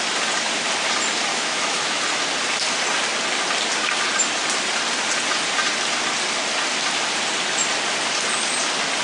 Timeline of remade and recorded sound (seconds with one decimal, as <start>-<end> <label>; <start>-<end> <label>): 0.0-1.3 recorded; 1.3-2.0 remade; 2.0-9.0 recorded

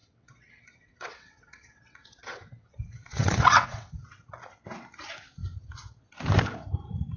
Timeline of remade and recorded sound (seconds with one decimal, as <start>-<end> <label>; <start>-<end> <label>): 0.0-4.0 remade; 4.0-7.2 recorded